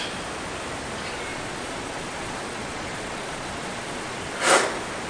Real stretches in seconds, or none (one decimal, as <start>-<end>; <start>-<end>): 0.0-1.3; 4.4-5.1